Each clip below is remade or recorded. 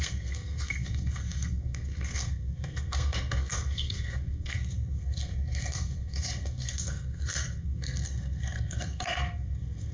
remade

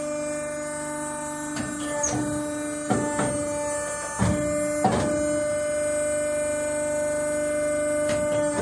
recorded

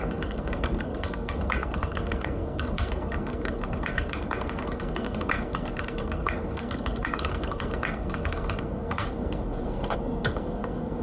remade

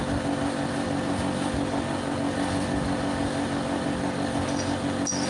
recorded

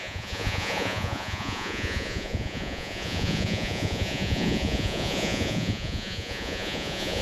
remade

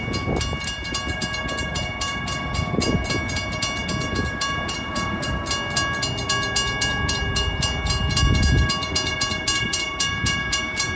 recorded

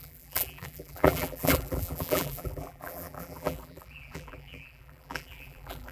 remade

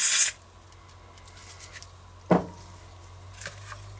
recorded